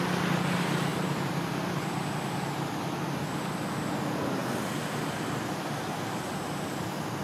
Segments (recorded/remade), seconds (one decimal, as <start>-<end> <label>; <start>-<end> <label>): 0.0-0.9 recorded; 0.9-1.6 remade; 1.6-7.2 recorded